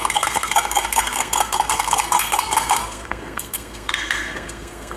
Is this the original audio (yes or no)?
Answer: no